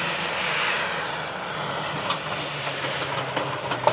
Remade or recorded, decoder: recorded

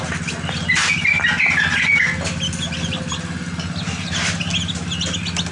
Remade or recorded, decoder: recorded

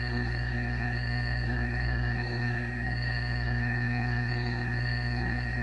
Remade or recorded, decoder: remade, codec, SNAC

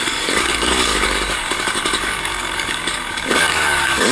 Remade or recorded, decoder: remade, codec, DAC